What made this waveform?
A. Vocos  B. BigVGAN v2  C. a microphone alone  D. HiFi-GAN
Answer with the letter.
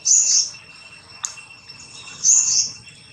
C